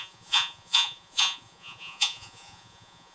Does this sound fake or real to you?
fake